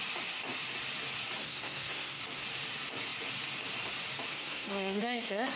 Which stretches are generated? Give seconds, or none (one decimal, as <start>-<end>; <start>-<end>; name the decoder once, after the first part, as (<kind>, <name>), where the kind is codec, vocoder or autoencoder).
1.4-2.2 (codec, SNAC); 4.3-5.6

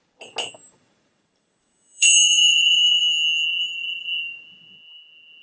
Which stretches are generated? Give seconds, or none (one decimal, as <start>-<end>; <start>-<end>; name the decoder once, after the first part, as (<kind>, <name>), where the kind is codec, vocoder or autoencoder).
0.6-3.0 (vocoder, BigVGAN v2); 3.5-4.2

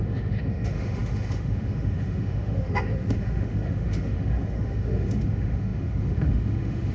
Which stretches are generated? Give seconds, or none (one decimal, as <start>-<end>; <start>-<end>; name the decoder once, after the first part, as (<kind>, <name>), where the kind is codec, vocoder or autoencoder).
0.0-6.9 (autoencoder, DAC-VAE)

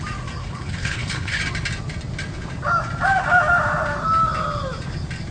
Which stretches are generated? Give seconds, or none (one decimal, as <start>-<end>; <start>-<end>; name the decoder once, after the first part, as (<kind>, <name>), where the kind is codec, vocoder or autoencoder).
0.4-1.4 (codec, HILCodec)

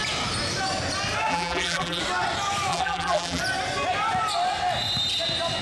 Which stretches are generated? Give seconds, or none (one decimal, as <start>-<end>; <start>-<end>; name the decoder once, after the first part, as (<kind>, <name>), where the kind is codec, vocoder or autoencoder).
1.3-2.0 (vocoder, BigVGAN v2); 2.7-3.4

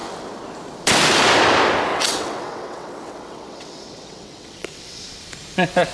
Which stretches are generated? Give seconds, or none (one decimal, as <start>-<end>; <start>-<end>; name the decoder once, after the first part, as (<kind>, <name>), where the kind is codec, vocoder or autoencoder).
1.9-5.0 (vocoder, WaveNeXt)

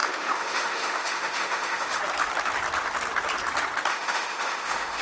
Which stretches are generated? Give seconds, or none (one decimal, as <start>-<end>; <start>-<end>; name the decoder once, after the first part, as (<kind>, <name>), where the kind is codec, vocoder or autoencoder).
0.0-2.0 (autoencoder, DAC-VAE); 3.9-5.0

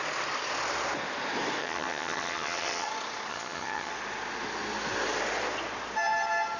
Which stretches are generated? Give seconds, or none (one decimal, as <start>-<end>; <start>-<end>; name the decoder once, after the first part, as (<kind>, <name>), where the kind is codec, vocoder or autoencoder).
1.6-2.9 (vocoder, HiFi-GAN); 3.3-3.9